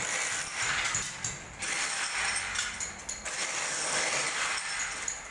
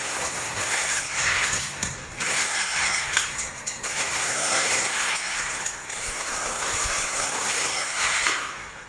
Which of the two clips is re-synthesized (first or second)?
second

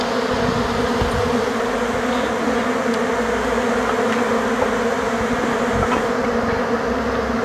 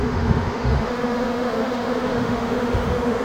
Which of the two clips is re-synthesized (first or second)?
second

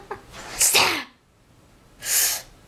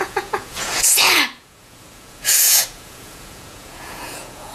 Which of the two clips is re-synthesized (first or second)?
second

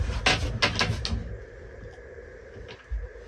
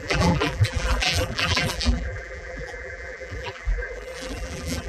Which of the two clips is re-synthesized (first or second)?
second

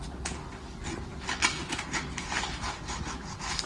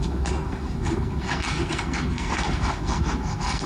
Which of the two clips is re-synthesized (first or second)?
second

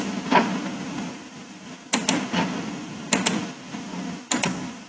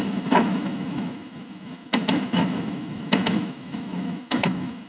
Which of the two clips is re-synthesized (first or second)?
second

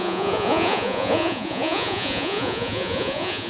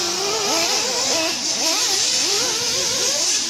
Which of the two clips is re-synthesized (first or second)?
first